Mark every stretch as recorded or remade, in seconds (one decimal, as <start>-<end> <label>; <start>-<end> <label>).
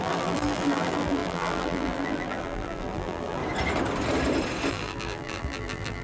0.0-3.4 remade; 3.4-4.7 recorded; 4.7-6.0 remade